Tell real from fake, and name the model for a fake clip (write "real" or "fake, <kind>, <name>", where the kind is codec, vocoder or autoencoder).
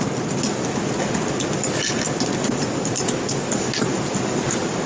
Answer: real